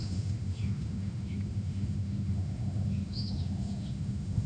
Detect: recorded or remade remade